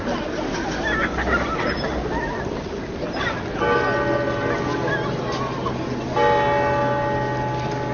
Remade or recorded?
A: recorded